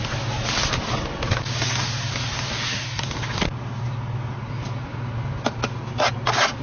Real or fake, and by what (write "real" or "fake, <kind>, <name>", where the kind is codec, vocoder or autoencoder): real